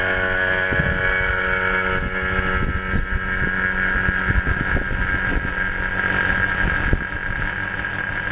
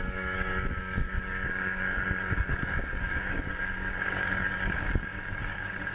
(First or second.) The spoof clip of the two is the second